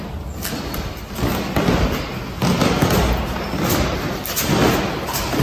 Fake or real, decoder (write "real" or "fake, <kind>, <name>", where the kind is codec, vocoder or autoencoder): real